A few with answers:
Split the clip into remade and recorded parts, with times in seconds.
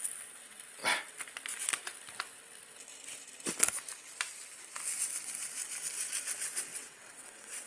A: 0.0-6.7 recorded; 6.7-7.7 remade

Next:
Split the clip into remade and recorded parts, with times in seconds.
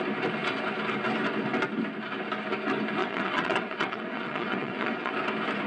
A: 0.0-3.0 recorded; 3.0-5.1 remade; 5.1-5.7 recorded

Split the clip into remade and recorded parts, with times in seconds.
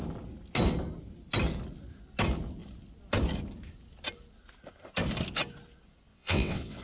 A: 0.0-6.1 recorded; 6.1-6.8 remade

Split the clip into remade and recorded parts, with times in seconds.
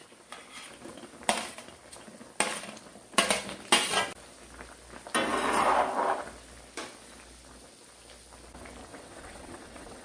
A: 0.0-8.9 recorded; 8.9-10.0 remade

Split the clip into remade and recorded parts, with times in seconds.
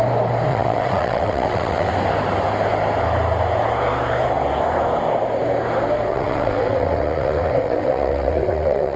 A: 0.0-0.5 recorded; 0.5-1.9 remade; 1.9-6.1 recorded; 6.1-9.0 remade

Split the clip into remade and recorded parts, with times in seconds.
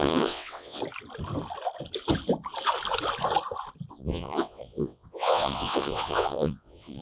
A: 0.0-0.8 remade; 0.8-3.9 recorded; 3.9-7.0 remade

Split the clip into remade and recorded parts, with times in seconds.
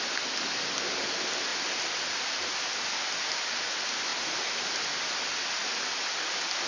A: 0.0-6.7 recorded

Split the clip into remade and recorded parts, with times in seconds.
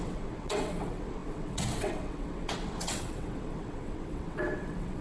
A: 0.0-5.0 remade